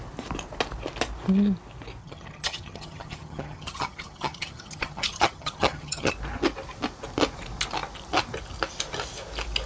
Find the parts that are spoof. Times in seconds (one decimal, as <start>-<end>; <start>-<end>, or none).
2.0-6.1